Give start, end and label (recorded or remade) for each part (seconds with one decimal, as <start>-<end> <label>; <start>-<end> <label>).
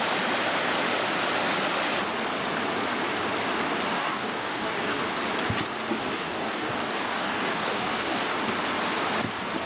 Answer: 0.0-3.9 recorded; 3.9-5.0 remade; 5.0-6.0 recorded; 6.0-8.3 remade; 8.3-9.7 recorded